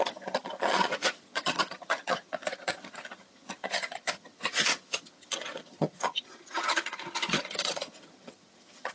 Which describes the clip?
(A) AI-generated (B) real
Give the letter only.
A